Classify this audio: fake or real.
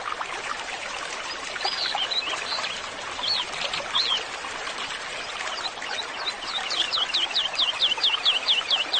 real